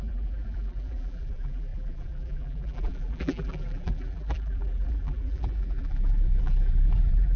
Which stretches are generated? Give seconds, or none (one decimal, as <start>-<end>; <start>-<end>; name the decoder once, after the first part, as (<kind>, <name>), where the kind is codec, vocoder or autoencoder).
0.0-7.4 (vocoder, BigVGAN v2)